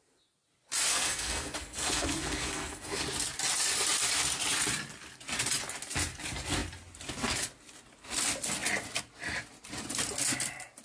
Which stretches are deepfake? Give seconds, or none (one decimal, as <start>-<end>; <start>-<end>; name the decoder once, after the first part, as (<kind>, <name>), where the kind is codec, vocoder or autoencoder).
0.9-3.0 (codec, SNAC)